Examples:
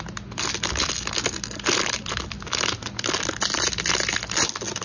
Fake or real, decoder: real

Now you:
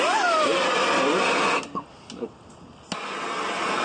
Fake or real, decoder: real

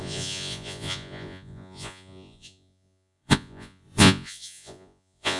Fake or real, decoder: fake, vocoder, Vocos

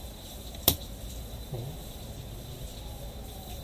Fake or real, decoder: real